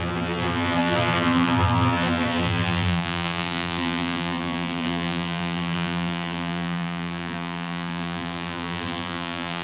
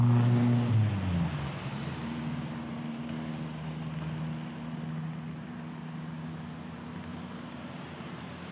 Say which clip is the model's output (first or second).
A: first